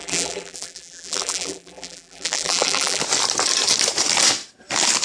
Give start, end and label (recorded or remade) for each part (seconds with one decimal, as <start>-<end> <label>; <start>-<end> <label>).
0.0-3.0 remade; 3.0-5.0 recorded